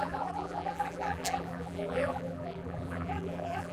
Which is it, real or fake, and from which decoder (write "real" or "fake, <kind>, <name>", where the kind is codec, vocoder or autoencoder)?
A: fake, vocoder, BigVGAN v2